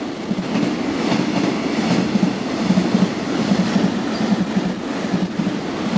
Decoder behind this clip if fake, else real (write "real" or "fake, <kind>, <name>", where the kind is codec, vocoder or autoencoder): real